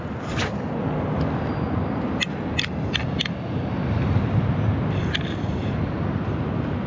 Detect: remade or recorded recorded